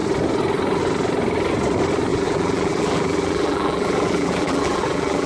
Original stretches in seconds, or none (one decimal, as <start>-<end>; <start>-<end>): 0.0-2.1